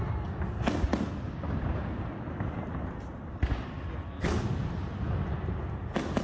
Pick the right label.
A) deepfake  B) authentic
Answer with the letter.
B